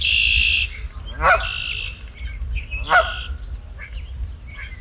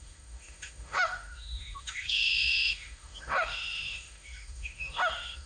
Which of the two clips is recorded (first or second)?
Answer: first